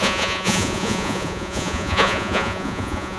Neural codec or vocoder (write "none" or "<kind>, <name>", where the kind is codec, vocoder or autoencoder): vocoder, Vocos